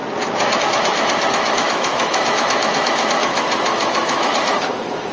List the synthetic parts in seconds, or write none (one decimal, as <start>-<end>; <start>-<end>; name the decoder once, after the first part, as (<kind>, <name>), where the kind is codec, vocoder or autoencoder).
0.6-5.1 (autoencoder, DAC-VAE)